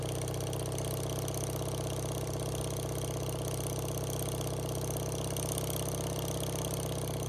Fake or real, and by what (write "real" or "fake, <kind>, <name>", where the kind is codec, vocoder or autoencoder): real